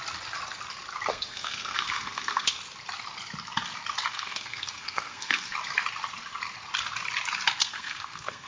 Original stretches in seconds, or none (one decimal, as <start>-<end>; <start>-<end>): 0.0-1.1; 2.6-4.1; 5.5-7.6